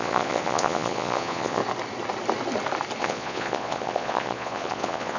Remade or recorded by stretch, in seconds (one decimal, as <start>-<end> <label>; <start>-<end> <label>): 0.0-1.6 remade; 1.6-3.0 recorded; 3.0-5.2 remade